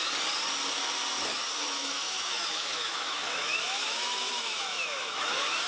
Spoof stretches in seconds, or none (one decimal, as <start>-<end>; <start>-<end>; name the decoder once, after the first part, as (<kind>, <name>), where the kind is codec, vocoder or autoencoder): 1.6-5.7 (autoencoder, DAC-VAE)